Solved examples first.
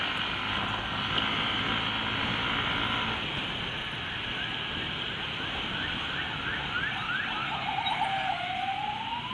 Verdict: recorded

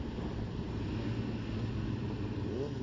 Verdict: recorded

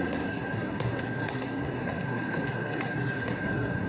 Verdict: remade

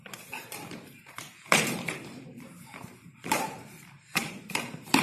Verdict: remade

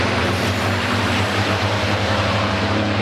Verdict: remade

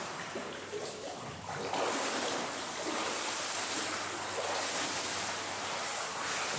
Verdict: recorded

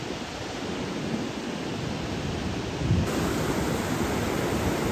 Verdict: recorded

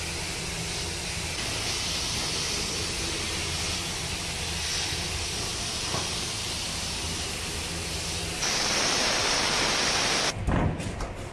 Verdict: recorded